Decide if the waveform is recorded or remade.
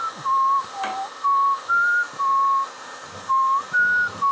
recorded